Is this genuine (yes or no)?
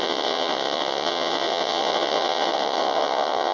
no